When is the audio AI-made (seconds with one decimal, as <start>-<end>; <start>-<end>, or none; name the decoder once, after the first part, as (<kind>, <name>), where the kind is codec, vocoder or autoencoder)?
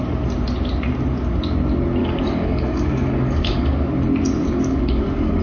2.0-3.9 (codec, DAC); 4.4-5.4